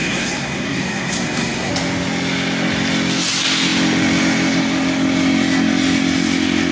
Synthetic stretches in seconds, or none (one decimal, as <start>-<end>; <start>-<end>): 0.0-1.7